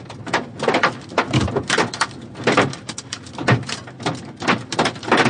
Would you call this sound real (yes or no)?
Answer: yes